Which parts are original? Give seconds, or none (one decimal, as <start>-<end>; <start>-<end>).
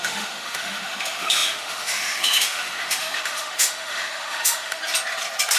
4.8-5.6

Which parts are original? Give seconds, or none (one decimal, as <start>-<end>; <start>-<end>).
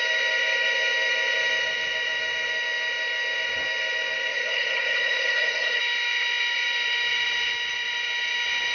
0.0-4.3; 5.8-8.7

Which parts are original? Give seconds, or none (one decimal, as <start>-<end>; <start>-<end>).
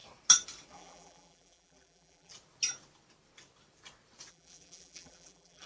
0.0-0.7; 2.3-4.3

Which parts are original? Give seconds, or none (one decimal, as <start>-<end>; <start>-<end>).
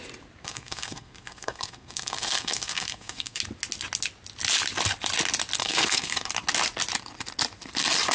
0.0-0.4; 3.4-5.6; 6.3-8.1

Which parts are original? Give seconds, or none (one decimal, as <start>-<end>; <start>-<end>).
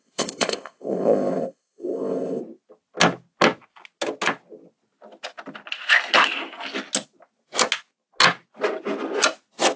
2.4-9.8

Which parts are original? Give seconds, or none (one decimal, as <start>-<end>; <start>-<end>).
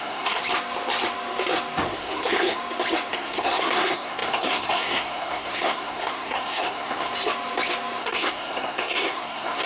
0.4-1.9; 2.6-3.1; 7.1-8.0